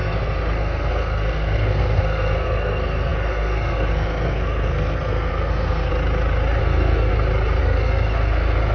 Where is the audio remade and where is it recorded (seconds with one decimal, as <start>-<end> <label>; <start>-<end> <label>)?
0.0-5.9 remade; 5.9-6.6 recorded; 6.6-7.1 remade; 7.1-7.6 recorded; 7.6-8.7 remade